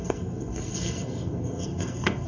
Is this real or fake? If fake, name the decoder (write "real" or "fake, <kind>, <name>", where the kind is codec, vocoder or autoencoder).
fake, codec, SNAC